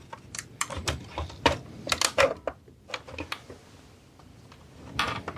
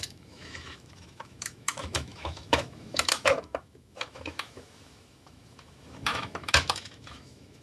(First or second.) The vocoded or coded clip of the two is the second